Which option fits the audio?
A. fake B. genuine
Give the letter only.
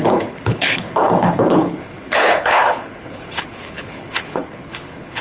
A